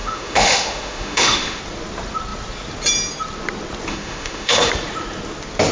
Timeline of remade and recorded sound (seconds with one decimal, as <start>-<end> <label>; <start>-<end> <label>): 0.0-1.6 remade; 1.6-3.9 recorded; 3.9-4.7 remade; 4.7-5.7 recorded